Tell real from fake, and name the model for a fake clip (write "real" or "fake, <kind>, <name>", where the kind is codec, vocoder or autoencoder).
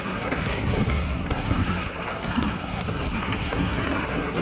fake, codec, SNAC